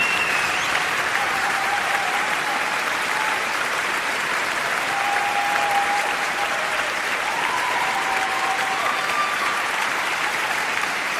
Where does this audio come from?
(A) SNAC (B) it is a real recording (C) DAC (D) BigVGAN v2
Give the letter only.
D